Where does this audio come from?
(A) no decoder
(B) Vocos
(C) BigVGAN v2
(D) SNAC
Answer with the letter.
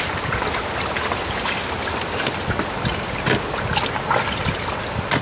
A